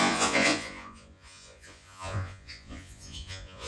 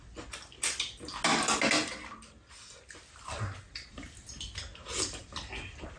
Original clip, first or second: second